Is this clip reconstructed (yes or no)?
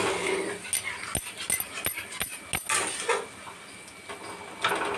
no